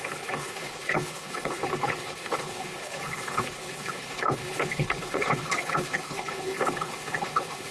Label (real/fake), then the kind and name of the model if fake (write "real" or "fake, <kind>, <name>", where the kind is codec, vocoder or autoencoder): fake, codec, HILCodec